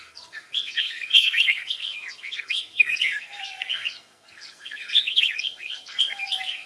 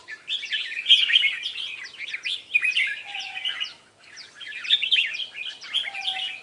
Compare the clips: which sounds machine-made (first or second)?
first